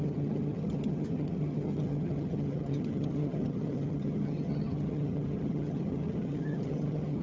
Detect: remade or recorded remade